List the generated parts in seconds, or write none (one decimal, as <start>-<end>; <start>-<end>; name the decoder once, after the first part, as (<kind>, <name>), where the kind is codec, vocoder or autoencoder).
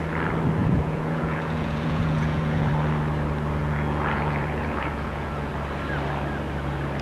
0.6-2.7 (vocoder, Vocos); 3.6-5.5